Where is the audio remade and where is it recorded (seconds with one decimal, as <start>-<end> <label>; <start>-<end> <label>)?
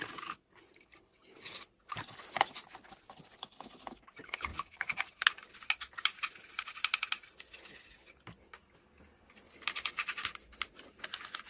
0.0-4.5 recorded; 4.5-5.1 remade; 5.1-11.5 recorded